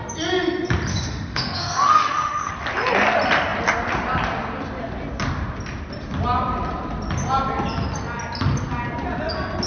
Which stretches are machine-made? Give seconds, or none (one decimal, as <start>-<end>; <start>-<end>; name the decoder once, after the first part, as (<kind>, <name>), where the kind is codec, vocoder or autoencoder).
0.9-2.5 (autoencoder, DAC-VAE)